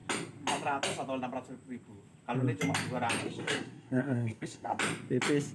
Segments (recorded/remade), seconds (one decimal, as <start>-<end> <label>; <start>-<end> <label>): 0.0-3.2 recorded; 3.2-4.8 remade; 4.8-5.5 recorded